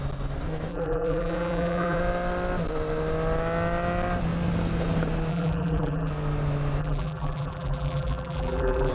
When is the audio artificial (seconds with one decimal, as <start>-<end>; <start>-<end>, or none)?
0.7-2.0; 5.3-6.1; 6.8-8.9